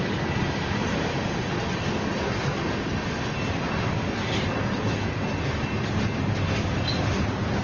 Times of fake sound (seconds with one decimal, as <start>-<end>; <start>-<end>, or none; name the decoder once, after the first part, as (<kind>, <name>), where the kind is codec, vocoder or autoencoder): none